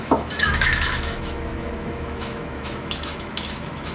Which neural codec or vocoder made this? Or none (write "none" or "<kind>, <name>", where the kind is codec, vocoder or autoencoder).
autoencoder, DAC-VAE